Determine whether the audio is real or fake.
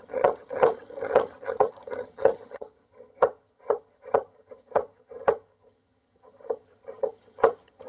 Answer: fake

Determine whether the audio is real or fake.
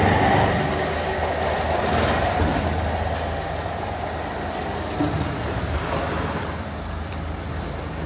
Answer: real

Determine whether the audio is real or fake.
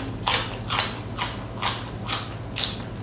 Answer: real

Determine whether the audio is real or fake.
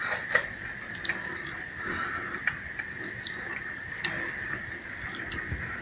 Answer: real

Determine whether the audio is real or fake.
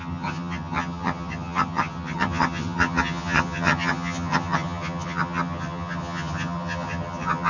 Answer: fake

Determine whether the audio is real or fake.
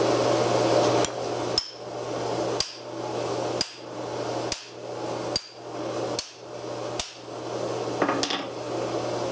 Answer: real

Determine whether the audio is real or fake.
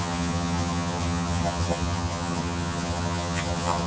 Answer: fake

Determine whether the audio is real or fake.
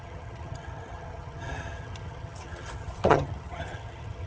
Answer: fake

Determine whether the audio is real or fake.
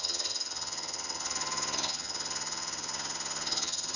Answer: fake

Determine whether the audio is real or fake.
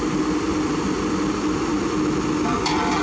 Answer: real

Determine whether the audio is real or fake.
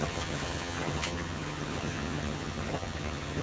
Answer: fake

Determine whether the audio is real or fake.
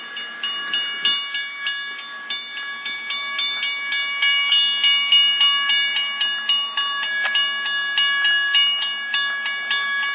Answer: real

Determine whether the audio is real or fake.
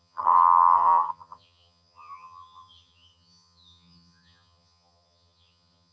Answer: fake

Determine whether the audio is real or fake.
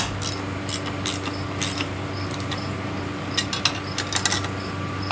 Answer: real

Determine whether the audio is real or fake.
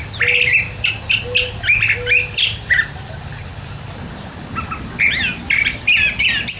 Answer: real